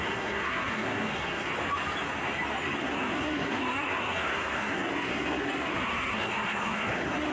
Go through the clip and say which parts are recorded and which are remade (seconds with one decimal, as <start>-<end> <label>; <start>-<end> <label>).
0.0-1.5 remade; 1.5-2.8 recorded; 2.8-7.3 remade